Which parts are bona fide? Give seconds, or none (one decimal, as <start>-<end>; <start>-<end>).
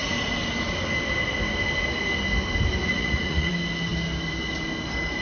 0.0-2.8; 3.5-5.2